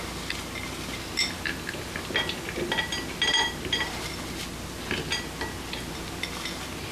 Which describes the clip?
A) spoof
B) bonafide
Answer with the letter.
B